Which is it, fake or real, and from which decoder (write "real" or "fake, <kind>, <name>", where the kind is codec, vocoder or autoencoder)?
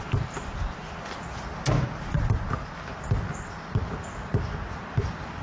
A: real